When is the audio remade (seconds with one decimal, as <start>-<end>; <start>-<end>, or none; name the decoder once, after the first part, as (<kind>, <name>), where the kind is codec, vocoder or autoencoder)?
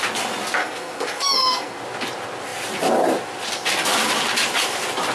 0.6-1.8 (codec, SNAC)